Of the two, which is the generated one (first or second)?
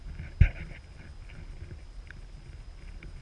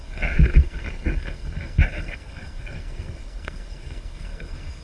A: second